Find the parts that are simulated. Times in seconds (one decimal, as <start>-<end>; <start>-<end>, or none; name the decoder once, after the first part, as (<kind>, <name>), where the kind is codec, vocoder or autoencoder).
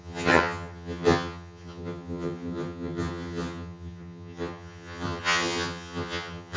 0.0-6.6 (vocoder, HiFi-GAN)